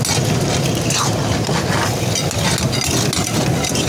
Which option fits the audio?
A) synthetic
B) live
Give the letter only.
B